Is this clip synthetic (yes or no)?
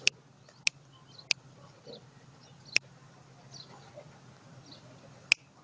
no